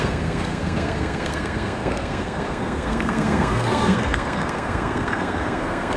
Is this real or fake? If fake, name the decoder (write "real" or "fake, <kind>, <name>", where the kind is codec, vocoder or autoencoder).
fake, codec, SNAC